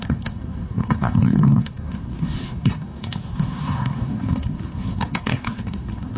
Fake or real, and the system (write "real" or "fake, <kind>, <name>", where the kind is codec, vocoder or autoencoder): fake, codec, SNAC